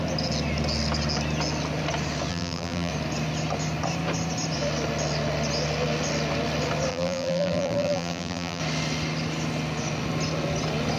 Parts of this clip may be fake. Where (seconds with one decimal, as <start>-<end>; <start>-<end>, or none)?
2.3-2.9; 6.9-8.6